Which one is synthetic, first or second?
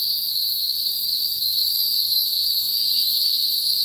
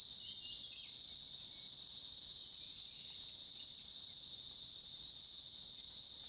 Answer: first